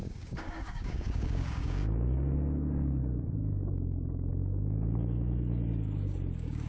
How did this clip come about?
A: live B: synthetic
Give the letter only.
B